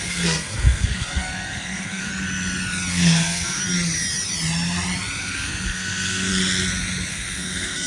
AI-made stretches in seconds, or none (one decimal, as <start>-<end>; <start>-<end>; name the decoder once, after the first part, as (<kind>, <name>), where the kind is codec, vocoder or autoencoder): 0.0-2.1 (codec, SNAC); 2.9-3.6; 5.2-6.3; 7.1-7.9